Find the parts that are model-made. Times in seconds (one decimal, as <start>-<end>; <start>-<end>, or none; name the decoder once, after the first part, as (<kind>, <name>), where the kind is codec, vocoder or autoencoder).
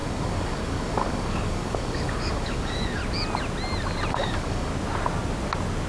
0.0-3.0 (codec, DAC); 4.1-4.7